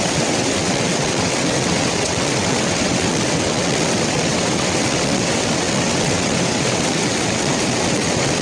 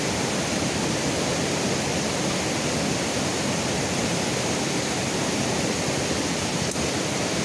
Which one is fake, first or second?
first